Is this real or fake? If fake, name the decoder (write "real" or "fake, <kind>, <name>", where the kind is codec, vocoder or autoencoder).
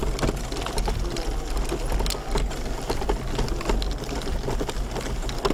real